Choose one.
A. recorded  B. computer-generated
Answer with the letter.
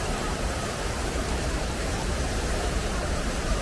B